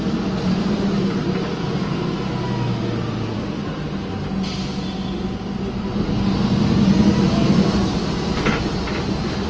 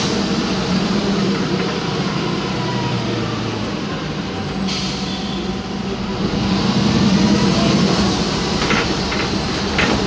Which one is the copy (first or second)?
second